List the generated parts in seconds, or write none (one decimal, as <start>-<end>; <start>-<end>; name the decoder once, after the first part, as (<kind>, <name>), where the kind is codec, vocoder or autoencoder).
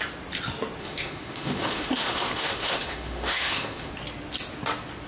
0.8-3.9 (autoencoder, DAC-VAE)